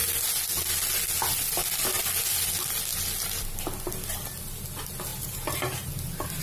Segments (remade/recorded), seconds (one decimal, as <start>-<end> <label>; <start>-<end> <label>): 0.0-5.1 recorded; 5.1-5.9 remade; 5.9-6.4 recorded